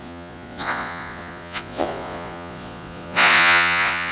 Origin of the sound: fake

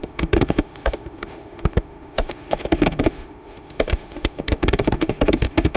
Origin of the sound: fake